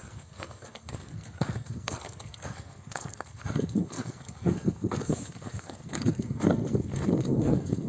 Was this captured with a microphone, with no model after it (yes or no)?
no